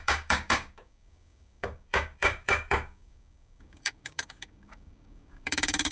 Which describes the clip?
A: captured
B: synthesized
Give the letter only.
B